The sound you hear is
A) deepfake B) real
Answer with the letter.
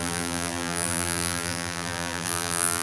A